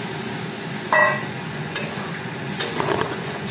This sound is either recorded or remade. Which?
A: remade